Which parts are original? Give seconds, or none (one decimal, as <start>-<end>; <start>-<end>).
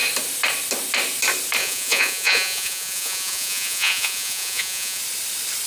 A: 0.0-1.6; 5.0-5.7